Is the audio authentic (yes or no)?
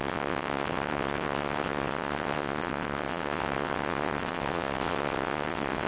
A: no